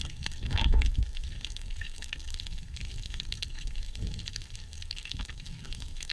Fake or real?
fake